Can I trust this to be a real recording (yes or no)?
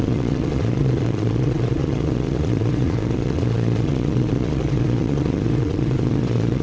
no